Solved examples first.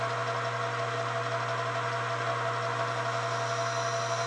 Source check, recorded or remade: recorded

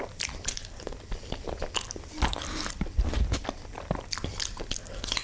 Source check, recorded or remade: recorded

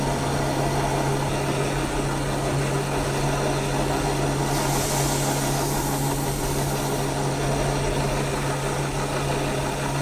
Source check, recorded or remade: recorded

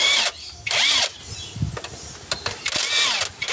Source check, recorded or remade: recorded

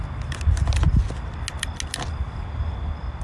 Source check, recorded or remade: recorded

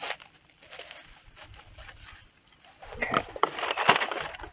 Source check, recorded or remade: recorded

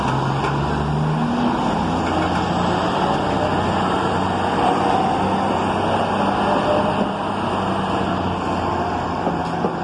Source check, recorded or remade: recorded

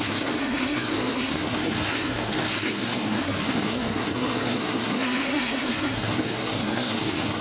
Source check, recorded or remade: remade